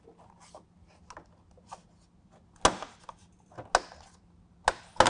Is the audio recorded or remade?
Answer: recorded